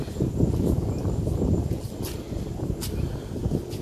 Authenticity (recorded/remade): recorded